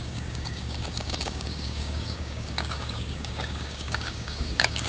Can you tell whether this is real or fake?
fake